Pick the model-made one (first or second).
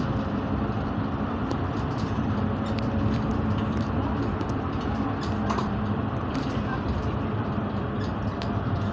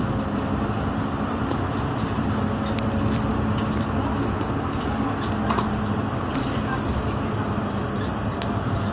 first